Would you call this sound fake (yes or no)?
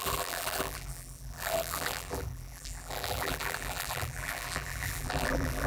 yes